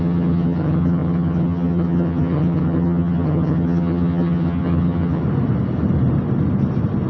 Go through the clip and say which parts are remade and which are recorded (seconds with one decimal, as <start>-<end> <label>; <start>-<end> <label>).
0.0-5.2 remade; 5.2-7.1 recorded